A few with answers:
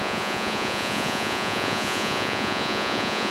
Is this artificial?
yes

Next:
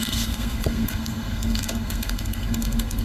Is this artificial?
yes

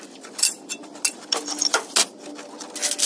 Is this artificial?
no